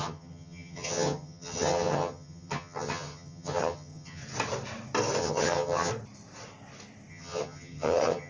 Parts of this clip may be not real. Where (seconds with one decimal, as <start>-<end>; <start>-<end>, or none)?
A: 0.0-4.2; 5.2-5.9; 7.1-8.3